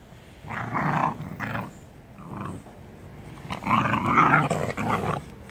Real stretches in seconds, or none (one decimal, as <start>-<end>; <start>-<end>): 0.0-5.5